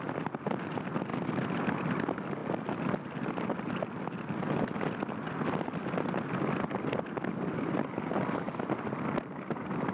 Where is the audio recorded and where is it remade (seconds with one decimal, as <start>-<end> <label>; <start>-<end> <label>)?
0.0-9.9 recorded